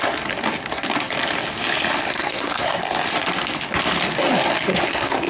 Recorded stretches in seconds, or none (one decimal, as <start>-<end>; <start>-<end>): 0.0-2.1; 2.8-4.7